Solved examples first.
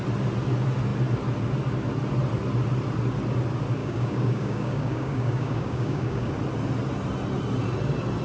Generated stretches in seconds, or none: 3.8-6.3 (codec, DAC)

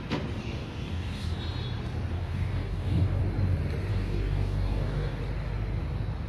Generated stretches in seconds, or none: 0.4-1.4 (codec, DAC); 2.1-3.2; 3.9-5.2

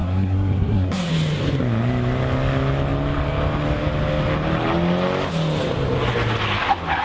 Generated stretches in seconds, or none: 0.0-1.1 (codec, SNAC)

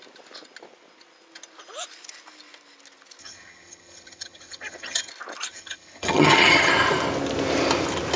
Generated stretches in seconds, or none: 3.2-5.1 (vocoder, HiFi-GAN); 5.5-6.7

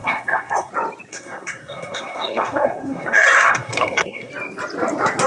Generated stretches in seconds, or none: 0.0-0.7 (codec, SNAC); 1.1-4.3

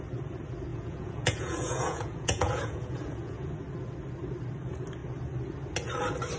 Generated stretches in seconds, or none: 0.7-3.5 (vocoder, Vocos)